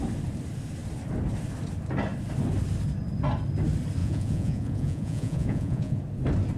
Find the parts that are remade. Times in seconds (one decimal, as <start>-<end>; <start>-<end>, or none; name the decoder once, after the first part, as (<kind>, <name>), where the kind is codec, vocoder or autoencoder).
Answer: 4.0-6.0 (vocoder, Vocos)